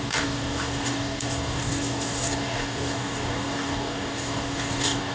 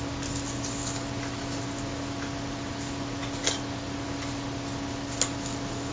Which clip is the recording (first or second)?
second